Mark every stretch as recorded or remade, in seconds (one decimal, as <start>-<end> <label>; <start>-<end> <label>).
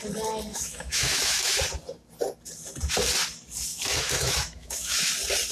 0.0-0.5 recorded; 0.5-1.6 remade; 1.6-3.7 recorded; 3.7-5.1 remade; 5.1-5.5 recorded